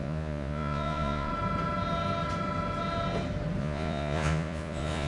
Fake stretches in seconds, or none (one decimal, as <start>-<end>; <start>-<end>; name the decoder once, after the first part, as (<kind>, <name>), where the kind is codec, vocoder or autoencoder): 0.0-1.3 (vocoder, Vocos); 3.6-5.1